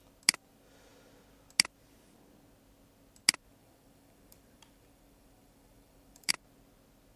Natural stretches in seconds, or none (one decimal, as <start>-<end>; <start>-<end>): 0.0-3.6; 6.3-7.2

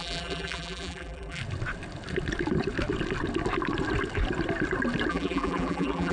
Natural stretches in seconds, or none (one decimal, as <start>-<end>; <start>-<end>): 1.4-5.1

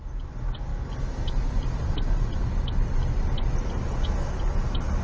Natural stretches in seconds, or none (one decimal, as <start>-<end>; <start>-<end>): 0.0-0.7; 3.7-5.0

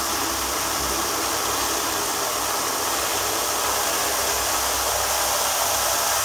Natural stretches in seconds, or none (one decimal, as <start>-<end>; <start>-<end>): 0.0-6.2